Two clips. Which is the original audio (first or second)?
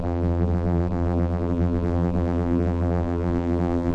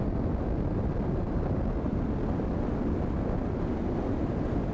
second